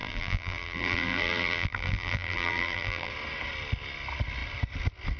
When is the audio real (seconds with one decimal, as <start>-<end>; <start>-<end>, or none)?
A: 3.1-5.2